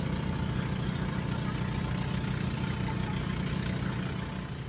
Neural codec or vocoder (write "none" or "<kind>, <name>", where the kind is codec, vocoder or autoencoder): none